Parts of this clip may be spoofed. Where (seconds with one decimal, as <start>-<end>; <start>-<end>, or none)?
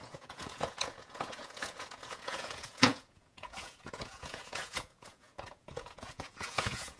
0.0-7.0